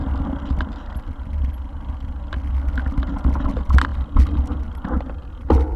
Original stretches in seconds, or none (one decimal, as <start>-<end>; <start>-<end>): 0.0-5.8